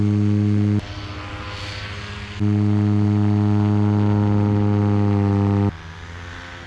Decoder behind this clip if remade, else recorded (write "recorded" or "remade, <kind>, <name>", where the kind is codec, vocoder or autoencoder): recorded